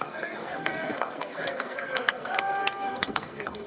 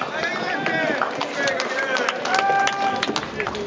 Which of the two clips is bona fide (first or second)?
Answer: second